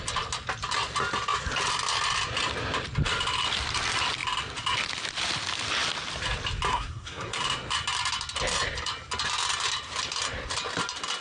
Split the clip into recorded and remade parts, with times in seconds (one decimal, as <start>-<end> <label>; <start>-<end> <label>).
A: 0.0-6.7 recorded; 6.7-7.4 remade; 7.4-11.2 recorded